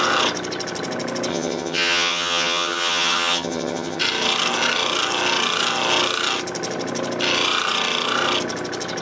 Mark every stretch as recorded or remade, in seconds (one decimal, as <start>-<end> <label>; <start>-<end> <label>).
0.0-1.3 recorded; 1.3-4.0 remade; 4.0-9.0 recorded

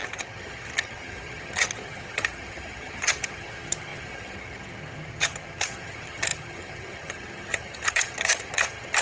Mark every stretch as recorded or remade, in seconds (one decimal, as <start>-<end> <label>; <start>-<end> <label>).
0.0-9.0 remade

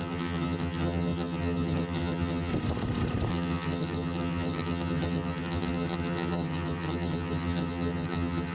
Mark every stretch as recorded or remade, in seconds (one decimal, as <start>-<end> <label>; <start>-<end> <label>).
0.0-2.5 remade; 2.5-3.3 recorded; 3.3-8.5 remade